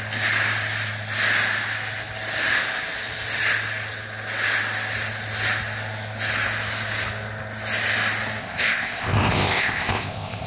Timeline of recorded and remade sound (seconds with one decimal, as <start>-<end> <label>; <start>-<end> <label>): 0.0-8.4 recorded; 8.4-10.5 remade